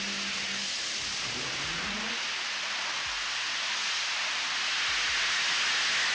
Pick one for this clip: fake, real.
real